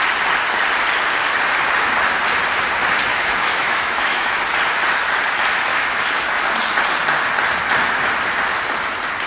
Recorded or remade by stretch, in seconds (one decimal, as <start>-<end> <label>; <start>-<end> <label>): 0.0-3.1 recorded; 3.1-4.4 remade; 4.4-5.7 recorded; 5.7-6.4 remade; 6.4-9.3 recorded